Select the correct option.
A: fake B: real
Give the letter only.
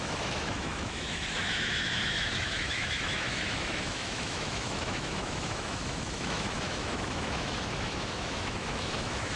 A